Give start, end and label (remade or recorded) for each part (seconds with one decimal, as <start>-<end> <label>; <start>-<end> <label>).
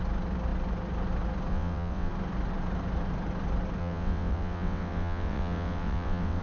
0.0-1.5 recorded; 1.5-2.1 remade; 2.1-3.8 recorded; 3.8-6.4 remade